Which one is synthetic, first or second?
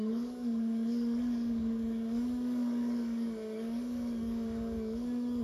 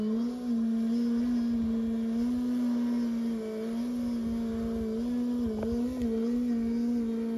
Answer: first